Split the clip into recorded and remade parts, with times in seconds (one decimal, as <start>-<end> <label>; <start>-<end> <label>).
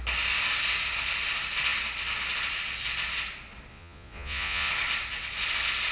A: 0.0-3.7 recorded; 3.7-4.7 remade; 4.7-5.9 recorded